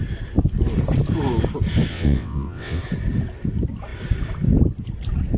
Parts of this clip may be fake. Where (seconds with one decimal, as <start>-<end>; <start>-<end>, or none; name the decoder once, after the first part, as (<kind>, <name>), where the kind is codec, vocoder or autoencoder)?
1.9-2.8 (vocoder, WaveNeXt)